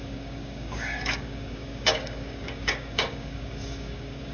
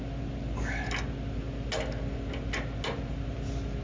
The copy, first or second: first